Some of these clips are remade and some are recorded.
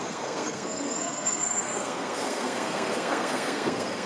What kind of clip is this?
remade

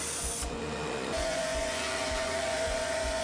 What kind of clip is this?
remade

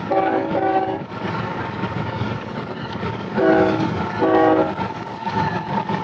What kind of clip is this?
remade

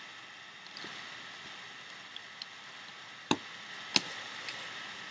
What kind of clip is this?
recorded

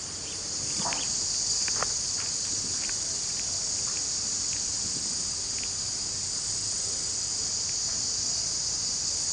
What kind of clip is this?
recorded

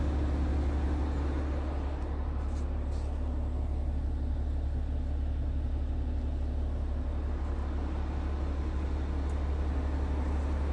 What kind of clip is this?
recorded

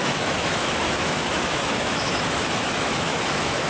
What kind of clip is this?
remade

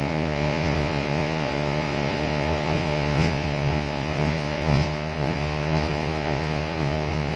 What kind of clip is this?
remade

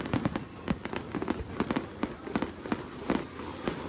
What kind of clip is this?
recorded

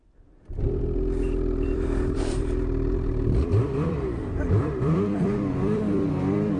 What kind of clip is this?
remade